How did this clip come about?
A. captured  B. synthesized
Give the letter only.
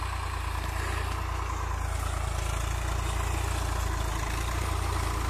A